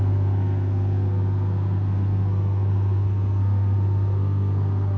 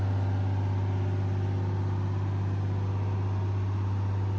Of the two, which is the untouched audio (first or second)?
second